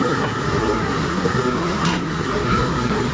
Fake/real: fake